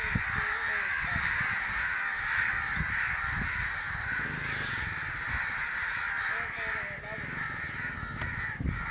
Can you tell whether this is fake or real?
real